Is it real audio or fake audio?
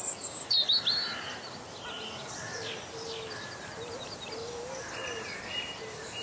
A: real